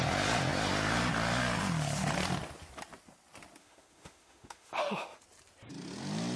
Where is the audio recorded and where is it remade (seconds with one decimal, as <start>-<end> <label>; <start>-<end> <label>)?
0.0-3.6 recorded; 3.6-5.2 remade; 5.2-6.4 recorded